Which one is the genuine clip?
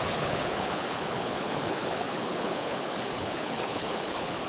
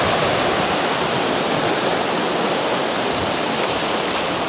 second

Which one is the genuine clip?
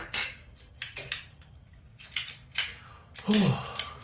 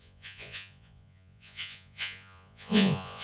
first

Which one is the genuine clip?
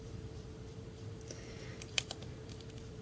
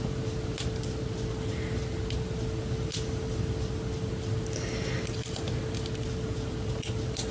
second